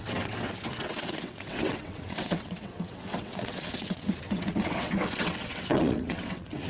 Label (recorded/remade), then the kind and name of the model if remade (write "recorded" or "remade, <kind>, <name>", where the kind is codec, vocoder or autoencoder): remade, vocoder, WaveNeXt